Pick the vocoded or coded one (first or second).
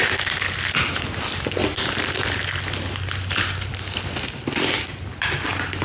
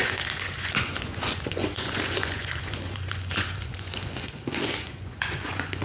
second